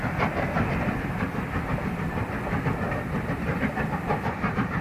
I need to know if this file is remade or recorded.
recorded